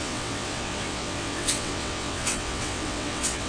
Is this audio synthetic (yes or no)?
yes